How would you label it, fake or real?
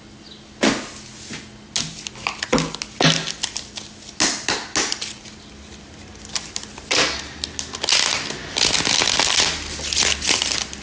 real